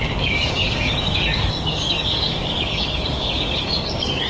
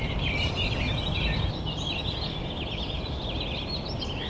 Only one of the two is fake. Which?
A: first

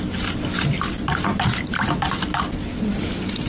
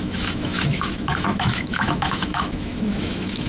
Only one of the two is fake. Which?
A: second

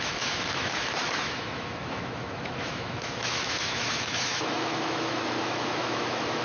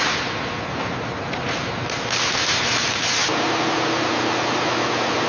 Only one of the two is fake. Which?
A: first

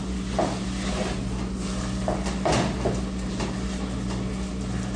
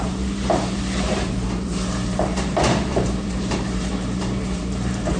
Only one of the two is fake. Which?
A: second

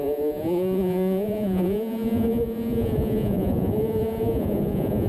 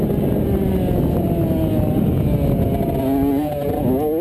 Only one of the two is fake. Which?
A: first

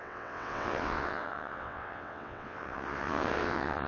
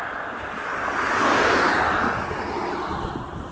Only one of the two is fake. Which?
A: first